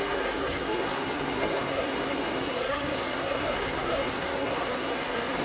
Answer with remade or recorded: remade